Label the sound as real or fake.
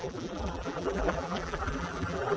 fake